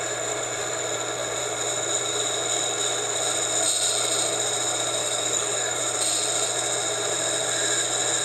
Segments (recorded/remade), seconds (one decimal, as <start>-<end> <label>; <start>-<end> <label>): 0.0-5.0 recorded; 5.0-5.8 remade; 5.8-8.2 recorded